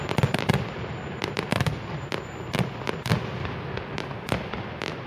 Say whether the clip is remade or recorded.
recorded